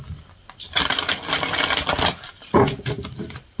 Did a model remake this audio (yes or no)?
no